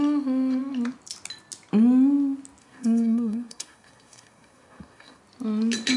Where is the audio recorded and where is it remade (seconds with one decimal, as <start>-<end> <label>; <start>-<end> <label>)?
0.0-2.6 recorded; 2.6-5.2 remade; 5.2-6.0 recorded